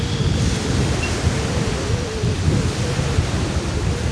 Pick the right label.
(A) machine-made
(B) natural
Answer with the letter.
B